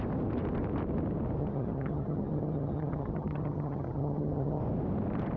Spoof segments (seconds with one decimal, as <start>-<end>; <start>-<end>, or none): 1.4-4.6